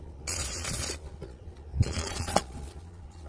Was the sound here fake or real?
fake